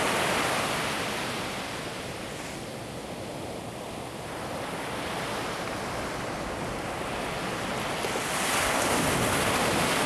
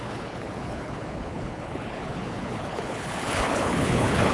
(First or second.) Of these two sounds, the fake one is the second